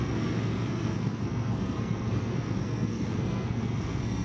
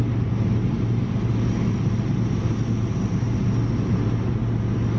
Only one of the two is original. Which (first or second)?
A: second